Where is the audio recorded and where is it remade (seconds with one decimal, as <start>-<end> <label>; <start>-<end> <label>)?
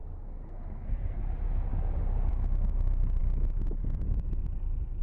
0.0-1.2 remade; 1.2-5.0 recorded